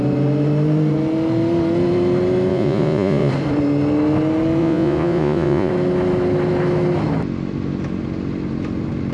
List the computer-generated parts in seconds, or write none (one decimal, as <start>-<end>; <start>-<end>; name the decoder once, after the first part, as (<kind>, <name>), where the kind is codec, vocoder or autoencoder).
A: 2.5-3.3 (vocoder, Vocos); 4.6-5.7